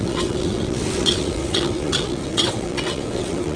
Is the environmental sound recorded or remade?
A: remade